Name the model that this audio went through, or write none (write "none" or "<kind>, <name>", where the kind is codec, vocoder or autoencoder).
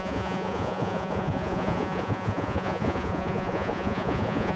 vocoder, Vocos